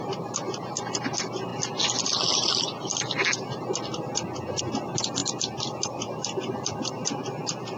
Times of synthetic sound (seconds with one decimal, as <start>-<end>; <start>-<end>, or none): 5.2-7.8